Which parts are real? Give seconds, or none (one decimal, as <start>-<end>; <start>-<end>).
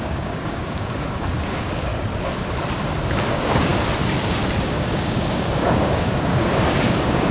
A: 1.9-3.3; 3.7-4.6